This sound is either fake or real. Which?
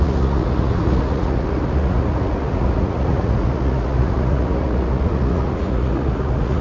fake